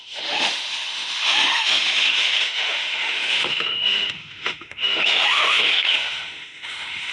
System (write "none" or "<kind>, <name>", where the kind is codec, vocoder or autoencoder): autoencoder, DAC-VAE